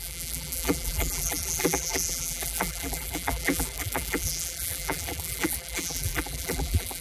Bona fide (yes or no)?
no